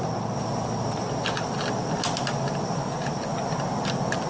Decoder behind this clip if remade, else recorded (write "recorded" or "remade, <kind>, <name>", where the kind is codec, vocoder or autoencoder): recorded